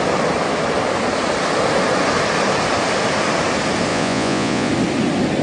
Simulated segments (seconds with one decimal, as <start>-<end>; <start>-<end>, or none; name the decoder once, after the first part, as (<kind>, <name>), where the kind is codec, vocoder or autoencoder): 3.9-4.7 (vocoder, Vocos)